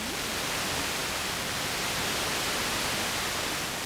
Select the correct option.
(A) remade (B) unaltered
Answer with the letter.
B